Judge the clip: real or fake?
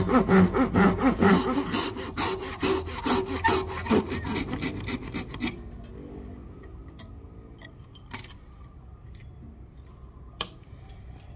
real